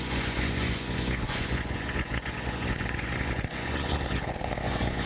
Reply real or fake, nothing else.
fake